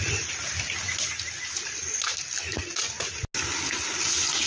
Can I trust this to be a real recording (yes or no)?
yes